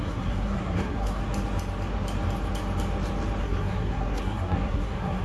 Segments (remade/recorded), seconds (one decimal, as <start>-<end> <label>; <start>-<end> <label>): 0.0-1.2 remade; 1.2-3.4 recorded; 3.4-5.2 remade